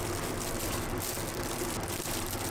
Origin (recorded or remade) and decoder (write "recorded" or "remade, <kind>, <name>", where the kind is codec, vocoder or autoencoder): remade, vocoder, BigVGAN v2